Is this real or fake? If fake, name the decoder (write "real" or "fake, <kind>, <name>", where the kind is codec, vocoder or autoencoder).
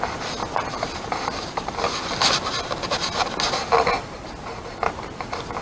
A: real